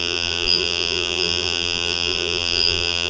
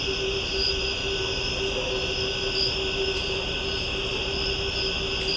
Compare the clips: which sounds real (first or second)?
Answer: second